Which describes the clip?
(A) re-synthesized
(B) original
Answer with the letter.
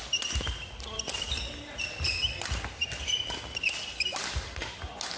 B